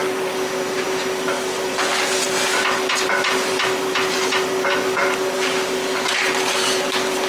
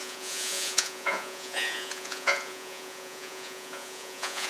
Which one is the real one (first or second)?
first